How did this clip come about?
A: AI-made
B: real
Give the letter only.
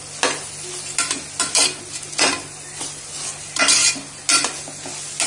B